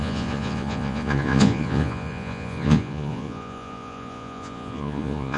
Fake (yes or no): yes